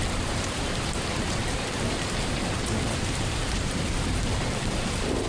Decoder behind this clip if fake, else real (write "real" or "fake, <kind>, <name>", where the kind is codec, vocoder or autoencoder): fake, vocoder, BigVGAN v2